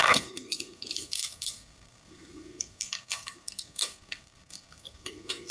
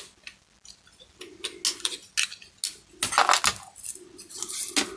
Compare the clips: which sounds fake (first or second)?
first